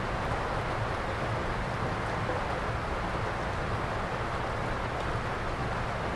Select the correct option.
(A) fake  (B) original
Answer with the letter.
B